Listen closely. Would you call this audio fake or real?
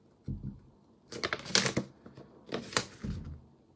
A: real